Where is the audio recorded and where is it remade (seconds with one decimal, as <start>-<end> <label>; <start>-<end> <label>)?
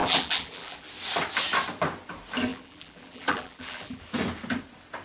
0.0-0.9 remade; 0.9-2.5 recorded; 2.5-4.0 remade; 4.0-5.0 recorded